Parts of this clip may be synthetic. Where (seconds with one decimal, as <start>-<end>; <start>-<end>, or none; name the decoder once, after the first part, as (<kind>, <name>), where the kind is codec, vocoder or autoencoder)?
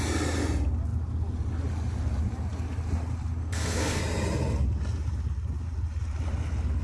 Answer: 3.4-4.0 (codec, SNAC)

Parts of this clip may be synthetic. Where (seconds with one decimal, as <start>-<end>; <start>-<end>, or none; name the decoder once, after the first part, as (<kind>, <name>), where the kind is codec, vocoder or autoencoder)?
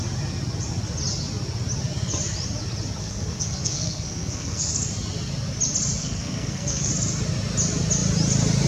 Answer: 3.0-4.7 (codec, SNAC); 6.0-6.9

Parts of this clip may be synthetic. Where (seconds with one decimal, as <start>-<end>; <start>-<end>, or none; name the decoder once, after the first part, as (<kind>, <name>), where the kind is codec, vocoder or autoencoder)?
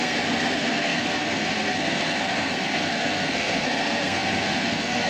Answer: 0.0-5.1 (codec, SNAC)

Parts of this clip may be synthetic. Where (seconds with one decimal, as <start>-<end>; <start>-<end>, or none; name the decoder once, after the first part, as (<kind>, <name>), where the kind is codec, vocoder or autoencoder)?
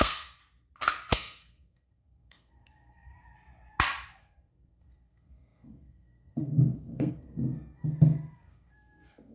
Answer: 0.0-0.4 (codec, SNAC); 1.1-3.1; 4.2-9.3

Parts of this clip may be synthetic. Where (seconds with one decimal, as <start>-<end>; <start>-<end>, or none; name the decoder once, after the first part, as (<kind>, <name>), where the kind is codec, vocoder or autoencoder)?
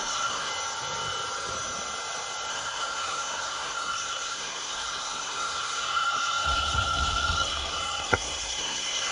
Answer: 0.0-0.5 (codec, SNAC); 2.5-9.1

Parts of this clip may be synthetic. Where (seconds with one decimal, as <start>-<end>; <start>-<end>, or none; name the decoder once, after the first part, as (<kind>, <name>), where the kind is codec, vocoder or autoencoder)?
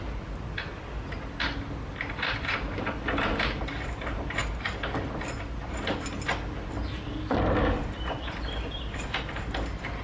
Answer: none